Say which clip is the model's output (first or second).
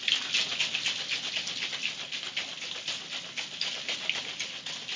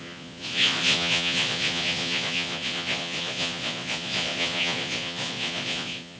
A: second